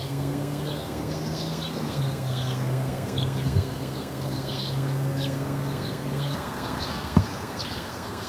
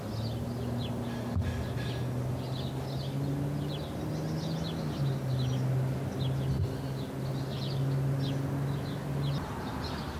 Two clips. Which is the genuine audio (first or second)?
second